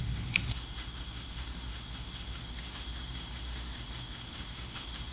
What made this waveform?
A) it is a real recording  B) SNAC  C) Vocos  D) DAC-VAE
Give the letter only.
D